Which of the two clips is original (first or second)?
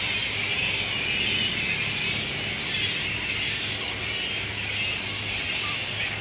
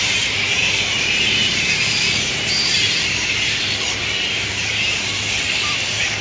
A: first